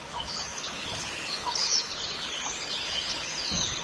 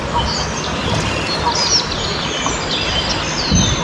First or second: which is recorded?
second